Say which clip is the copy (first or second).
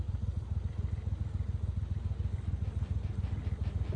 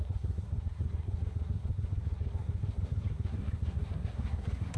second